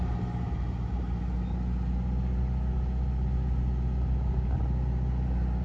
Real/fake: real